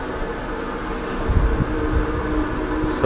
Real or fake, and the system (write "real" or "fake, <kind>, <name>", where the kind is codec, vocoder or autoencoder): real